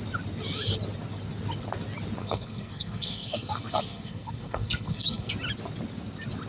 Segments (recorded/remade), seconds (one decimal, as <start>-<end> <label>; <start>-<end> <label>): 0.0-2.2 recorded; 2.2-5.3 remade; 5.3-6.5 recorded